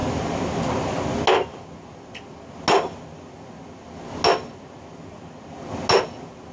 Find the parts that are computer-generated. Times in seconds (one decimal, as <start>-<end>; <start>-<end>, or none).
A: none